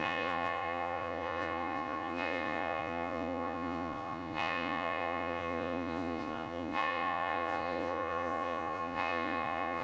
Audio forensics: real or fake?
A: fake